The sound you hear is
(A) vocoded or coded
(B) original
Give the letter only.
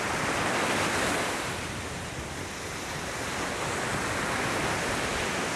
B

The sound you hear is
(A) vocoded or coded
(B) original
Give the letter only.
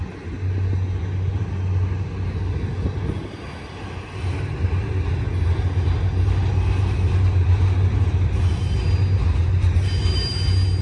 B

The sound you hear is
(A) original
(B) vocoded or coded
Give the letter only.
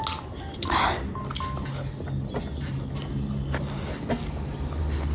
A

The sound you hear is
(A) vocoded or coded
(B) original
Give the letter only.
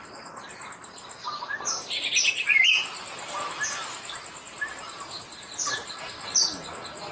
B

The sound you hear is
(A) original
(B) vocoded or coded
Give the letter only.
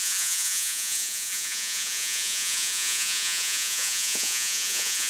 B